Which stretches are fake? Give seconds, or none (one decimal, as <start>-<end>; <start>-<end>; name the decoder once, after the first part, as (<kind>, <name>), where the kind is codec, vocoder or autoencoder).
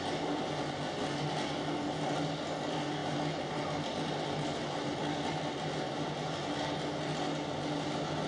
none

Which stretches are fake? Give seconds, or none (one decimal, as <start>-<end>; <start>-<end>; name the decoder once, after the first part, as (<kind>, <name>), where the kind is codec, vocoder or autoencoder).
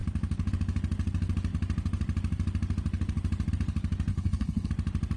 4.1-4.7 (codec, HILCodec)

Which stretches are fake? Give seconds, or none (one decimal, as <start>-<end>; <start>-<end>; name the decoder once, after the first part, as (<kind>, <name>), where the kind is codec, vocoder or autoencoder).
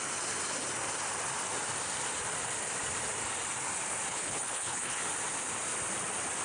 4.1-5.0 (codec, HILCodec)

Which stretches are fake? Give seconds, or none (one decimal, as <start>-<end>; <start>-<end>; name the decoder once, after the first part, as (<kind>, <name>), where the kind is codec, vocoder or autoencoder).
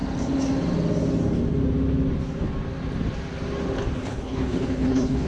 4.0-5.3 (codec, HILCodec)